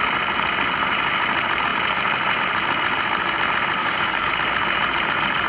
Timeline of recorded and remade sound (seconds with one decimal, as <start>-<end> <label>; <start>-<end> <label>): 0.0-3.8 recorded; 3.8-4.3 remade; 4.3-5.5 recorded